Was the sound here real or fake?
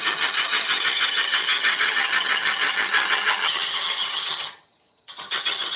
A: fake